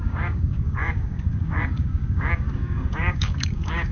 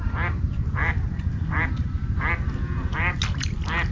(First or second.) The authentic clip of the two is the second